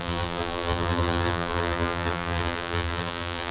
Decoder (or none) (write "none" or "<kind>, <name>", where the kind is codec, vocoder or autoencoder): vocoder, BigVGAN v2